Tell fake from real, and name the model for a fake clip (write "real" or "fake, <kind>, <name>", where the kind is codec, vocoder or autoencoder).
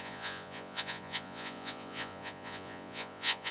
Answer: fake, vocoder, Vocos